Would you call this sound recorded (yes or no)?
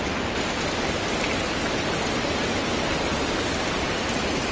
yes